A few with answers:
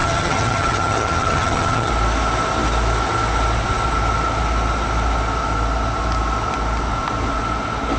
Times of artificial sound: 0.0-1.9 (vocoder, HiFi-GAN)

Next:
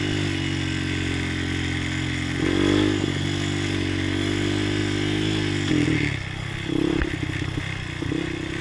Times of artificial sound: none